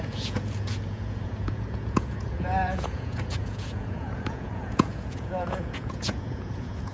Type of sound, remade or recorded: remade